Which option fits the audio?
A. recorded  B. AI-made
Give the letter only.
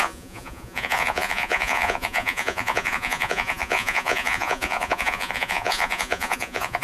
B